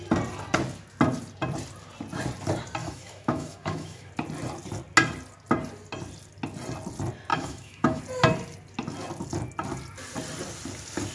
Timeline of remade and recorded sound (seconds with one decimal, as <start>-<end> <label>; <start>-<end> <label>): 0.0-2.8 recorded; 2.8-4.1 remade; 4.1-7.3 recorded; 7.3-8.0 remade; 8.0-11.1 recorded